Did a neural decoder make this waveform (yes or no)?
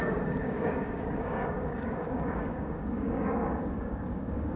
yes